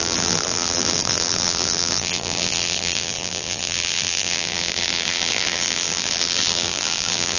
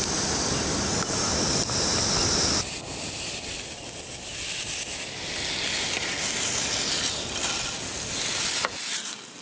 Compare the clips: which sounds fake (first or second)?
first